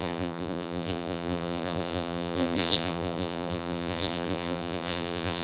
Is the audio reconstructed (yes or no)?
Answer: yes